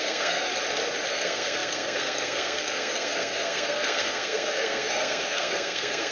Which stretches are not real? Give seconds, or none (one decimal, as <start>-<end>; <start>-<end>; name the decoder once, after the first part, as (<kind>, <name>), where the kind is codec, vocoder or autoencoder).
0.0-0.5 (codec, SNAC); 1.1-6.1